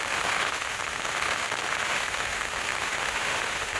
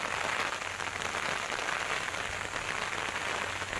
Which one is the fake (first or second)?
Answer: first